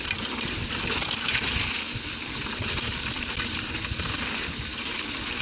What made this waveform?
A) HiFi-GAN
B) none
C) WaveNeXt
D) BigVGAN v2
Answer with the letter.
B